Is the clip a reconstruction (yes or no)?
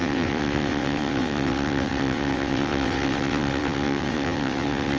yes